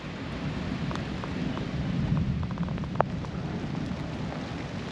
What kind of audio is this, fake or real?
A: real